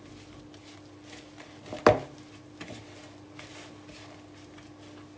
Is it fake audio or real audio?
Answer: real